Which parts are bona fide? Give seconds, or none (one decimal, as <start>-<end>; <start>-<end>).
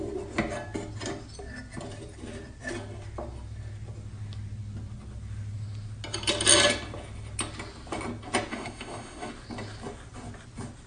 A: 0.0-8.5; 9.3-10.9